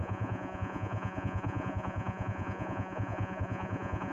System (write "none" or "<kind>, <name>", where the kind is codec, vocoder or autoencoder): vocoder, Vocos